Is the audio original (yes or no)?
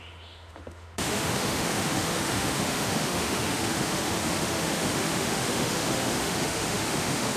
no